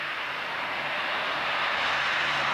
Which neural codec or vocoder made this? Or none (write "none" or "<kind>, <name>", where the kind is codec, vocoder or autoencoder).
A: vocoder, BigVGAN v2